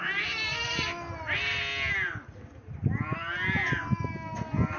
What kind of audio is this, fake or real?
real